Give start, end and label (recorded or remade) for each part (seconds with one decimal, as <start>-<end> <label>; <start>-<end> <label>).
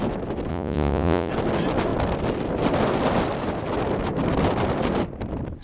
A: 0.0-0.5 recorded; 0.5-1.3 remade; 1.3-5.6 recorded